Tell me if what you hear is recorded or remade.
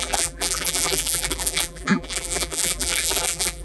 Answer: remade